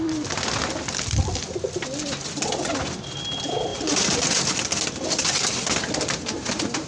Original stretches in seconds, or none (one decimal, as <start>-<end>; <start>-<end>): 0.0-3.7; 5.6-6.9